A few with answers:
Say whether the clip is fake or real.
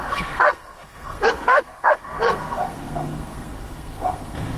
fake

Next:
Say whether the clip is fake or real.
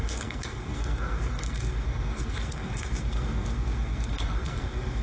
fake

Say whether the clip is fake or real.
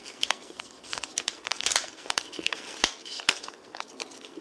fake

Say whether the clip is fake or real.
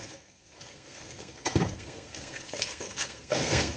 fake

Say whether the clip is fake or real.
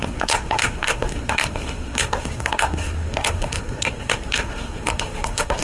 fake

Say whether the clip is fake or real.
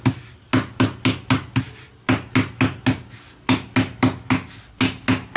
real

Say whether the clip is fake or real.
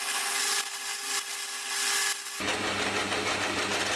real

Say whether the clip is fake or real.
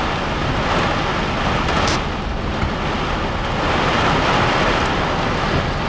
real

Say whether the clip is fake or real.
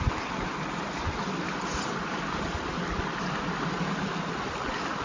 real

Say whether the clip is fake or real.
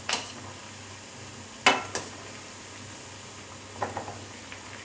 real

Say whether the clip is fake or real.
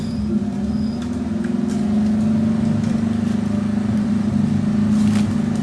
real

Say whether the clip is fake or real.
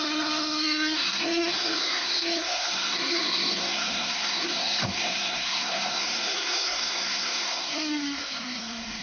fake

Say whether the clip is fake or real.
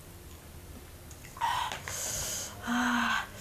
real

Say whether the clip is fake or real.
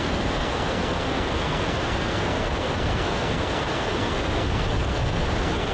fake